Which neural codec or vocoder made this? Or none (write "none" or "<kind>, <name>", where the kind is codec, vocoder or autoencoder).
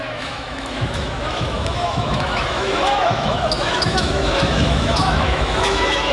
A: autoencoder, DAC-VAE